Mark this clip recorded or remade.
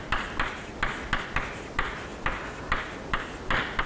recorded